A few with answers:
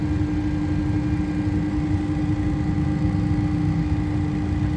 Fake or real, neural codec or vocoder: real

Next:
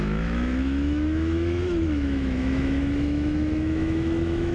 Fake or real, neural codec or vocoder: fake, autoencoder, DAC-VAE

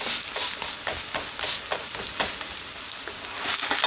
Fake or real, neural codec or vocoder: real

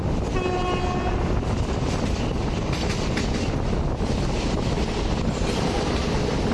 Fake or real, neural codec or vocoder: real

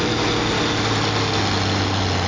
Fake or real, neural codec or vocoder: real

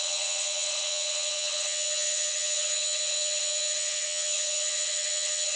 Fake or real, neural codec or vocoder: fake, vocoder, HiFi-GAN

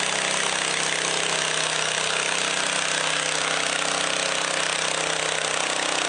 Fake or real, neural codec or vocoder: real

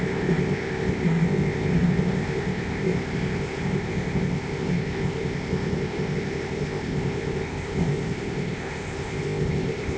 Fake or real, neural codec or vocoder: fake, codec, ZipCodec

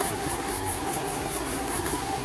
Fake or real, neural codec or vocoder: fake, codec, SNAC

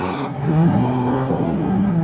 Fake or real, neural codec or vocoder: fake, codec, SNAC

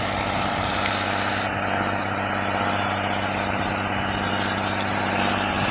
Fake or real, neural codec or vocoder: real